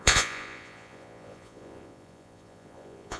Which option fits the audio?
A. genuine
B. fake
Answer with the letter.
B